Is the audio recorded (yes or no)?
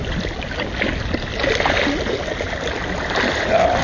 yes